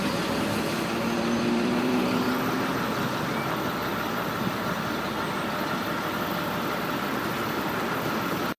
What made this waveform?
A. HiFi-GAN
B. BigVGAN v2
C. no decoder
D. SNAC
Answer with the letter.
B